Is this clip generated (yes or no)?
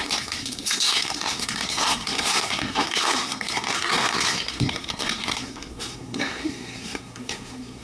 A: yes